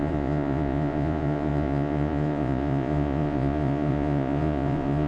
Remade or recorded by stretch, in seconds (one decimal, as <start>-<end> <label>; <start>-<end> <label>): 0.0-5.1 remade